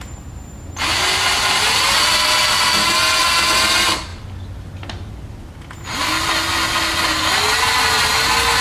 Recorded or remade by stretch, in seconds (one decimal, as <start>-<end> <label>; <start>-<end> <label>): 0.0-8.6 recorded